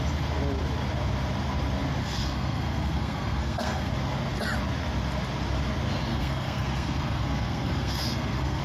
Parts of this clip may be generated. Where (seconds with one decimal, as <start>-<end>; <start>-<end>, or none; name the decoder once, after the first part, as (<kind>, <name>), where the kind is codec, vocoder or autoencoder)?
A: 2.0-3.9 (codec, SNAC); 6.1-8.6